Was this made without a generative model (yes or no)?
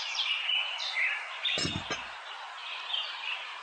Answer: yes